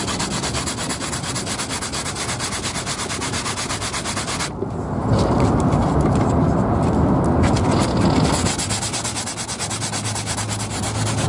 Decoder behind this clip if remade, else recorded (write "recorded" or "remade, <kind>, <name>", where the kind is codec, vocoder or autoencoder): recorded